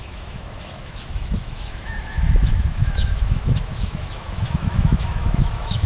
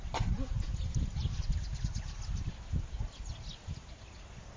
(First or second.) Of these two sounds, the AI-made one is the first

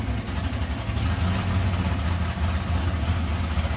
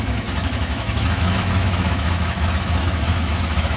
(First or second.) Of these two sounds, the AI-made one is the second